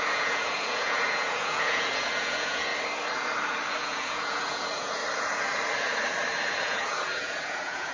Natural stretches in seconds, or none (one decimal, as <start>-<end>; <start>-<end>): 2.7-3.7; 5.0-6.6